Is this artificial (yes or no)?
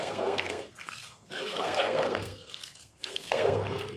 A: yes